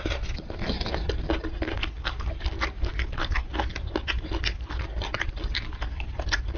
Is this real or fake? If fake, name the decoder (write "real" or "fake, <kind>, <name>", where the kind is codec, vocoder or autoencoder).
real